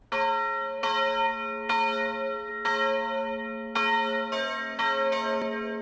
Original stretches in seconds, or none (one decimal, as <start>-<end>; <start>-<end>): 0.0-5.8

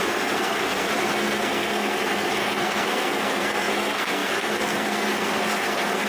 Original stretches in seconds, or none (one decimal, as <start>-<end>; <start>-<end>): none